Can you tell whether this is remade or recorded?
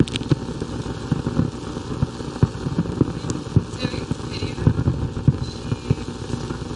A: recorded